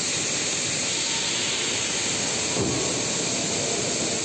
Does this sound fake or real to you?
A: real